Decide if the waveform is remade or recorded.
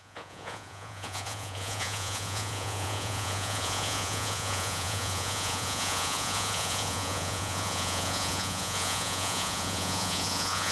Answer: remade